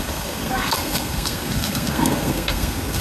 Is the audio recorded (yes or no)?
no